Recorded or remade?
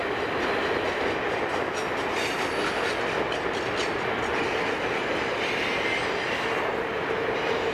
recorded